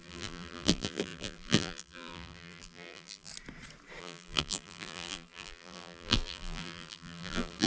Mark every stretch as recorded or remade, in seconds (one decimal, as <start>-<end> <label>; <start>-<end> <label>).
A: 0.0-3.3 remade; 3.3-4.0 recorded; 4.0-7.7 remade